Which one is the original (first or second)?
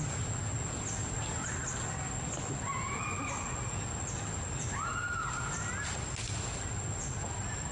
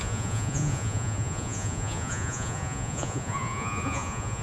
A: first